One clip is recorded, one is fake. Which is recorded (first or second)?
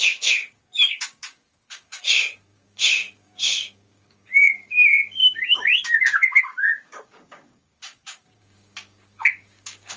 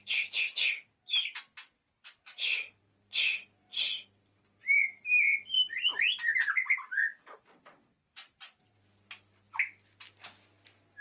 second